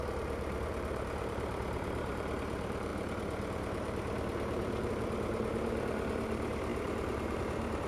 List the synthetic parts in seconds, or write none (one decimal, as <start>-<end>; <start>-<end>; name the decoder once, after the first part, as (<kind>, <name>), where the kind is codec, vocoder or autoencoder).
0.0-7.9 (vocoder, BigVGAN v2)